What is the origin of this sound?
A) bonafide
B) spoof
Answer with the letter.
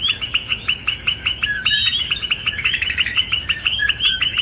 B